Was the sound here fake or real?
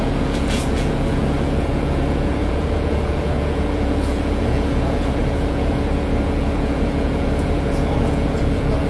fake